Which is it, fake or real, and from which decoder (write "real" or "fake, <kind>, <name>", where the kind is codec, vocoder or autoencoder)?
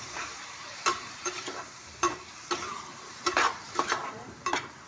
fake, vocoder, BigVGAN v2